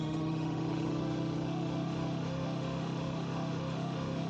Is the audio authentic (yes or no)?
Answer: no